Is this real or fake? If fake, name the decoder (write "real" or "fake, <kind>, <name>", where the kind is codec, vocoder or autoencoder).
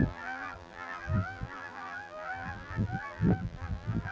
fake, vocoder, BigVGAN v2